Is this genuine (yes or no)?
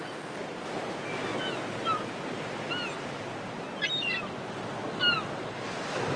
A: yes